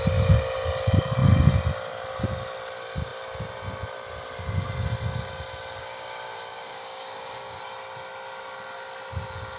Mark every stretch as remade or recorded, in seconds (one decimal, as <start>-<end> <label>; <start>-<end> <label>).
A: 0.0-5.8 recorded; 5.8-7.6 remade; 7.6-9.6 recorded